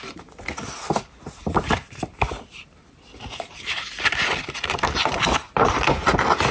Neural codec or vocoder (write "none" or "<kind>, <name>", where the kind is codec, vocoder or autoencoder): none